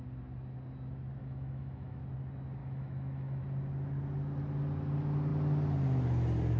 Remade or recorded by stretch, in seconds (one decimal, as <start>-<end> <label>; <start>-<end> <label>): 0.0-1.2 recorded; 1.2-2.0 remade; 2.0-2.6 recorded; 2.6-3.4 remade; 3.4-6.6 recorded

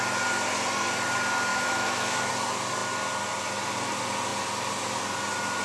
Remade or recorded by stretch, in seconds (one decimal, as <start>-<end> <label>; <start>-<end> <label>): 0.0-1.5 recorded; 1.5-2.3 remade; 2.3-5.6 recorded